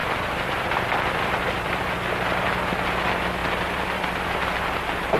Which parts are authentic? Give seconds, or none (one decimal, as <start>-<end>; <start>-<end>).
1.8-3.4; 4.2-5.2